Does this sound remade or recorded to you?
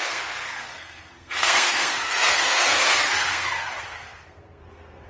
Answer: remade